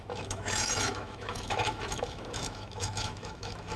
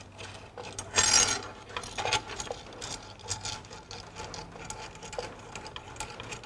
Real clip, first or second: second